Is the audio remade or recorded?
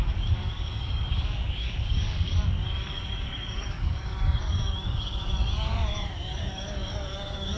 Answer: remade